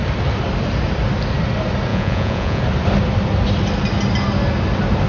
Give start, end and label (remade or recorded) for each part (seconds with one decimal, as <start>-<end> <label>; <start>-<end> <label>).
0.0-1.9 recorded; 1.9-2.6 remade; 2.6-5.1 recorded